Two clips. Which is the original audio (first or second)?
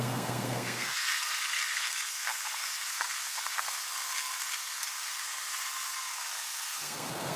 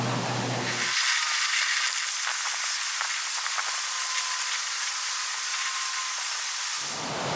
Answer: second